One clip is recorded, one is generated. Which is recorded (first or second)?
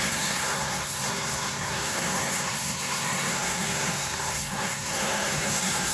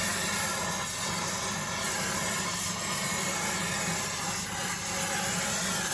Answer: second